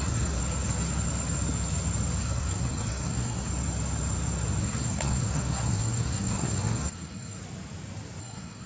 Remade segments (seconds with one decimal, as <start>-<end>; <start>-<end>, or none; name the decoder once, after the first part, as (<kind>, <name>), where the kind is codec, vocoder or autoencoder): 0.0-0.4 (codec, SNAC); 2.2-3.5; 4.6-7.4; 8.2-8.7